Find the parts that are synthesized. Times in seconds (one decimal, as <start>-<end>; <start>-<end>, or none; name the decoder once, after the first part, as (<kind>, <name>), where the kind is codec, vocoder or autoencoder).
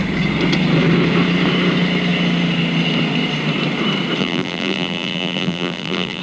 4.2-6.2 (vocoder, BigVGAN v2)